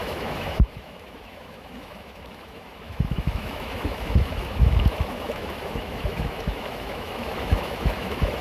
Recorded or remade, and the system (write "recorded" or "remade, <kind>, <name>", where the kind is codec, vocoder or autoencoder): remade, autoencoder, DAC-VAE